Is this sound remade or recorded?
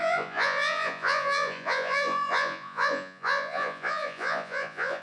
remade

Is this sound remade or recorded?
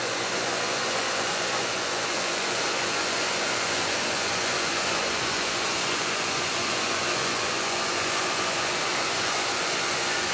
remade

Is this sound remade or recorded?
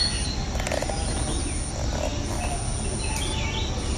recorded